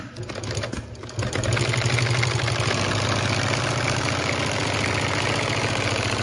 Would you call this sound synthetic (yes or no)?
no